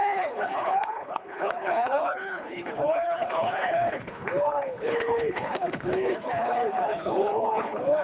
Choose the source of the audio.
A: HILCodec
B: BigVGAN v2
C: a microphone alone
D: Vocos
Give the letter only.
A